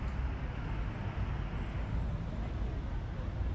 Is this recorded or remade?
recorded